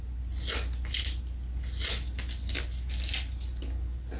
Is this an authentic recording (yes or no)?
yes